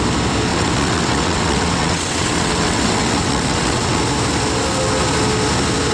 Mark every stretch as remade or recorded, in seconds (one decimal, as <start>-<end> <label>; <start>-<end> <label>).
0.0-0.5 recorded; 0.5-4.0 remade; 4.0-5.9 recorded